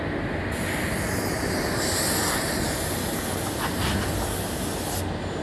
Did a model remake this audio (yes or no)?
no